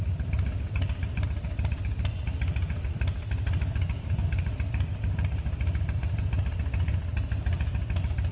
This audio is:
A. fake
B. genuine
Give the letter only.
B